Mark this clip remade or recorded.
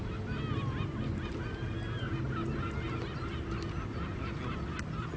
recorded